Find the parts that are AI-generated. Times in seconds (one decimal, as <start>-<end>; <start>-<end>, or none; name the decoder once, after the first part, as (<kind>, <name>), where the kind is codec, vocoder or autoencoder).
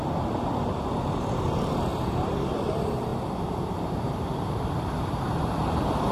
1.9-2.6 (vocoder, BigVGAN v2); 3.1-4.6